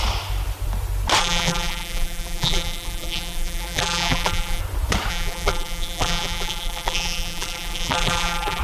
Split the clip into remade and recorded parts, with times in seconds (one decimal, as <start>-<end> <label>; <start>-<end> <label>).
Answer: 0.0-1.2 recorded; 1.2-4.6 remade; 4.6-5.1 recorded; 5.1-8.6 remade